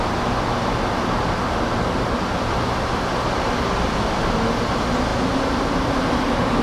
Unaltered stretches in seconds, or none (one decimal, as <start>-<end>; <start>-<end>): 0.0-6.6